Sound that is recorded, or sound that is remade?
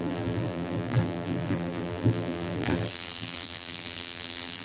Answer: remade